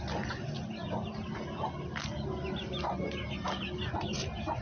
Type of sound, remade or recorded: recorded